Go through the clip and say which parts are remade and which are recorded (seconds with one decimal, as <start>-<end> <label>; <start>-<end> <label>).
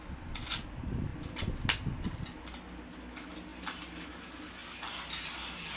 0.0-5.8 recorded